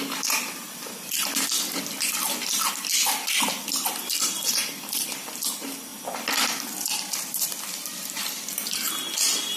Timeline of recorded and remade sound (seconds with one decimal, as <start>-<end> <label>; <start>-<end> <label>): 0.0-1.8 recorded; 1.8-2.9 remade; 2.9-3.4 recorded; 3.4-9.6 remade